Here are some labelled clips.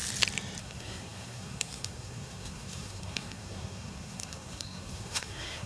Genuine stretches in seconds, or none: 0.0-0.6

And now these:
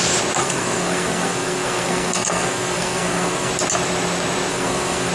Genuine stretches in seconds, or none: 0.0-0.4; 3.5-4.5

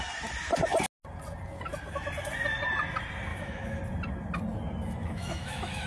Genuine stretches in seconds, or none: 0.0-3.3; 3.8-5.0

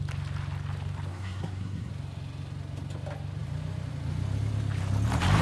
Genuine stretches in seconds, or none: 0.0-1.1; 1.9-5.4

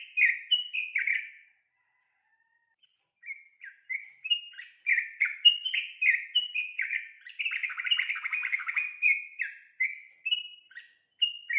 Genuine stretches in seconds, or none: 0.0-1.1; 4.9-11.6

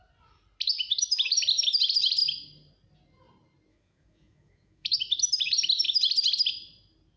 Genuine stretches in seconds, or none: 0.0-3.7; 5.0-7.2

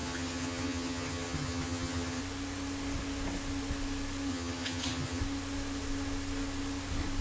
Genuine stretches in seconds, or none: 2.2-4.3; 5.2-7.2

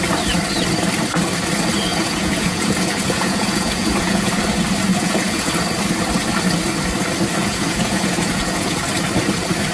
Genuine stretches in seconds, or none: 0.0-1.9; 4.3-4.9; 5.5-7.4; 8.8-9.7